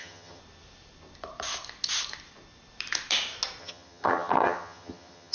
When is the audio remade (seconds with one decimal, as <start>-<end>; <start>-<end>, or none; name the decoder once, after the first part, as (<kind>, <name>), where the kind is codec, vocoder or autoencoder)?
0.0-0.4 (vocoder, HiFi-GAN); 3.6-5.3